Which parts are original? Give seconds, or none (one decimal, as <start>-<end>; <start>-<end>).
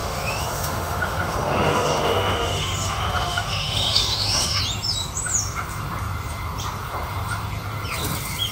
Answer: 4.6-8.5